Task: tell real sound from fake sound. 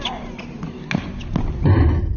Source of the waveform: real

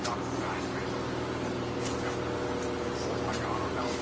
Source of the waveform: real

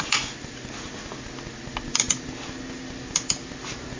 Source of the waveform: real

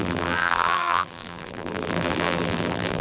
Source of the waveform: fake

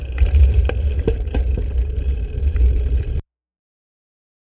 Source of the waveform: fake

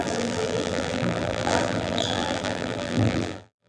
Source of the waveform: fake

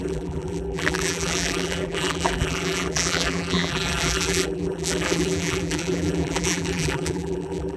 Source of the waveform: fake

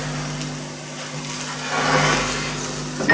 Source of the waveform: real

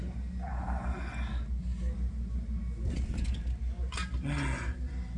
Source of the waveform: real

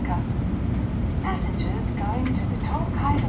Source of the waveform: real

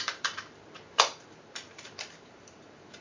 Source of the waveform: fake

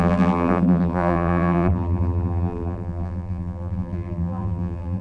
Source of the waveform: fake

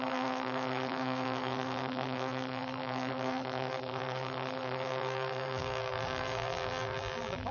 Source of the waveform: fake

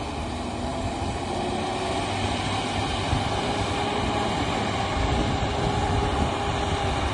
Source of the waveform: real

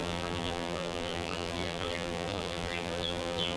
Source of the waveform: fake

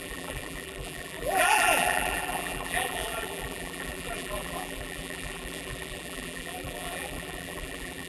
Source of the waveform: fake